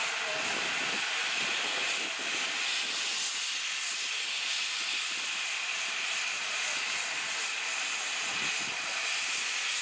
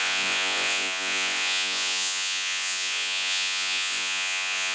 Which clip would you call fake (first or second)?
second